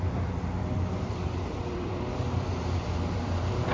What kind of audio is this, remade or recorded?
remade